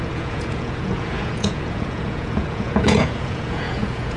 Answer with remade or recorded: remade